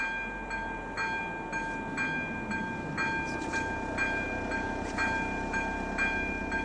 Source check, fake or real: real